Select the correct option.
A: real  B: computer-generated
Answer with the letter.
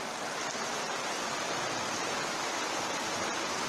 A